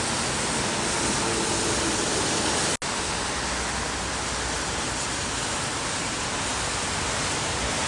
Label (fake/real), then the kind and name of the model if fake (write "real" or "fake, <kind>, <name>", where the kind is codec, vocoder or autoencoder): real